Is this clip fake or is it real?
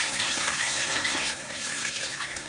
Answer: fake